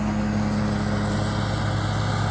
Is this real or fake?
real